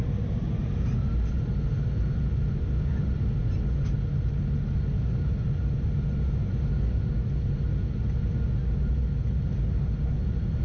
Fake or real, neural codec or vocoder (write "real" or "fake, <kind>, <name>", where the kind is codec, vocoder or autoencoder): real